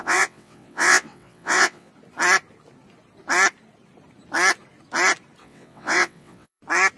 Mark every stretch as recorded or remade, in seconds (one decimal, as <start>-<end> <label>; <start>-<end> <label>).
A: 0.0-1.9 remade; 1.9-5.4 recorded; 5.4-6.6 remade; 6.6-7.0 recorded